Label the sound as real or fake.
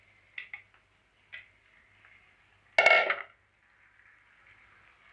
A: real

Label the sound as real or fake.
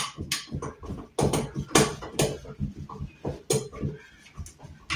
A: real